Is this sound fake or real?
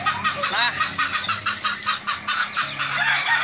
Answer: real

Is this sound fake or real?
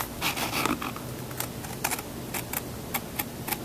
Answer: real